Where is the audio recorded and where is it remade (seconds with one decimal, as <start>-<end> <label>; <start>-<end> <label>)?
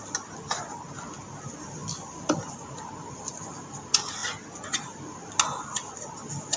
0.0-6.6 recorded